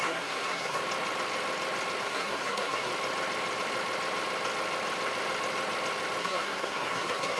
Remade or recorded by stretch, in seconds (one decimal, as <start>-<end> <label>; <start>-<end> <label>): 0.0-0.8 remade; 0.8-2.0 recorded; 2.0-2.9 remade; 2.9-6.2 recorded; 6.2-7.4 remade